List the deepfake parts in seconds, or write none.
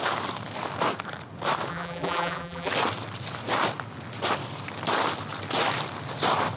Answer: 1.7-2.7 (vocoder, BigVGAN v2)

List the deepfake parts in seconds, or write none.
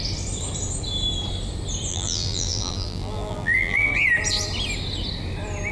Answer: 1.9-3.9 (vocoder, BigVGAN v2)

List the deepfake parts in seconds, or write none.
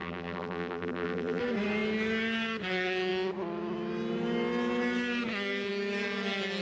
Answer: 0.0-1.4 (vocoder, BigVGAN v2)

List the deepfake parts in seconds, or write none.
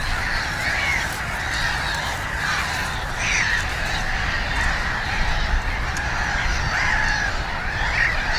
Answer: 0.0-0.9 (vocoder, BigVGAN v2); 3.2-8.4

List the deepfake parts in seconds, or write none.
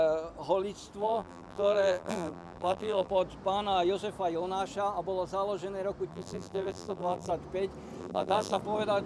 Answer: 1.0-3.1 (vocoder, BigVGAN v2); 6.1-7.3; 8.0-8.6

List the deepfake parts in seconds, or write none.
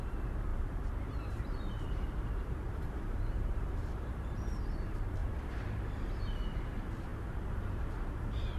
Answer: 0.0-8.6 (vocoder, BigVGAN v2)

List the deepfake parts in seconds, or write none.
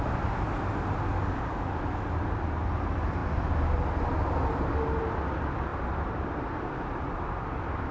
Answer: 5.7-7.0 (vocoder, BigVGAN v2)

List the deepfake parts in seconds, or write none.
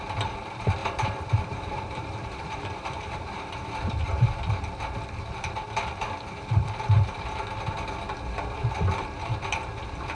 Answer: 0.8-3.4 (vocoder, BigVGAN v2)